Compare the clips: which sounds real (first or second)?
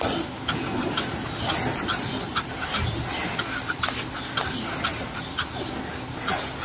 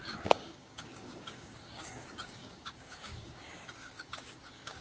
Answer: first